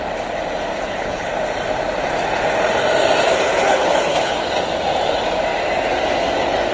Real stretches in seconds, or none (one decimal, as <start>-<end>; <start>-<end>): 0.0-0.7; 1.3-3.5; 4.4-6.7